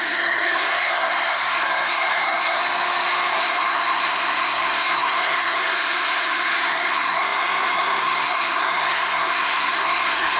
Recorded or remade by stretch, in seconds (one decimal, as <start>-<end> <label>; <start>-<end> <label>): 0.0-2.6 remade; 2.6-3.3 recorded; 3.3-10.4 remade